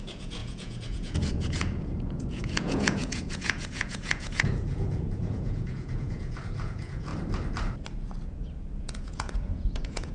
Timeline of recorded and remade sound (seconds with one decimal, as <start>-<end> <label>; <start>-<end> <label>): 0.0-7.1 remade; 7.1-8.8 recorded; 8.8-10.1 remade